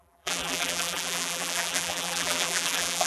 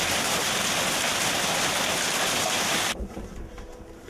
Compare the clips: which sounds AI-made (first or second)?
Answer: first